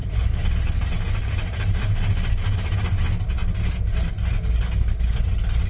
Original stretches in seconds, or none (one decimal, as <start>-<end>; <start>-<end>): 0.0-5.7